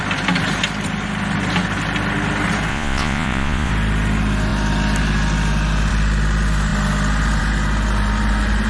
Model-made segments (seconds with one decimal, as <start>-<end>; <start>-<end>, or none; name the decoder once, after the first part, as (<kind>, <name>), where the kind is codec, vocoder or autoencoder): 2.7-3.7 (vocoder, Vocos)